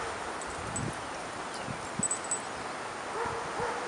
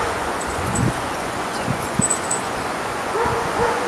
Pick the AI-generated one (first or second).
second